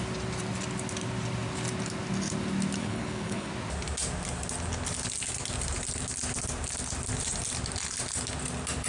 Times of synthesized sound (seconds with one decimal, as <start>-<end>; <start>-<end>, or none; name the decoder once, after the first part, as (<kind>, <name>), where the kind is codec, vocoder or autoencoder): 2.8-3.5 (codec, HILCodec)